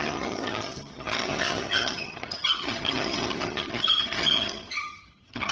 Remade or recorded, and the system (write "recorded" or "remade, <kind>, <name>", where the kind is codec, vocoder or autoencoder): remade, vocoder, HiFi-GAN